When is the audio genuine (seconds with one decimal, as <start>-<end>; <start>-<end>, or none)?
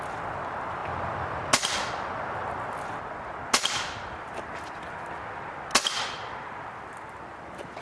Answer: 0.0-7.8